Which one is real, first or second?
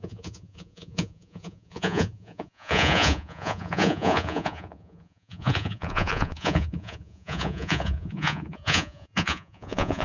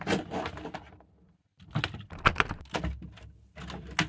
second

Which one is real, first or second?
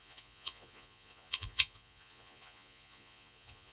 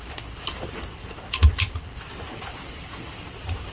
second